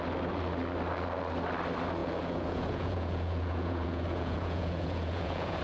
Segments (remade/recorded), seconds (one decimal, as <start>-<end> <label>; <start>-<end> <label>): 0.0-2.0 recorded; 2.0-5.6 remade